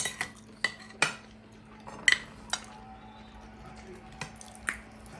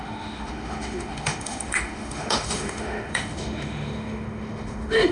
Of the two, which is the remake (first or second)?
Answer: second